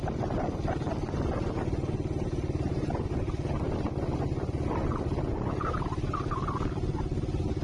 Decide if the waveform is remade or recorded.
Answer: recorded